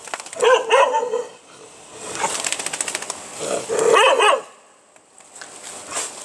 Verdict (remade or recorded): recorded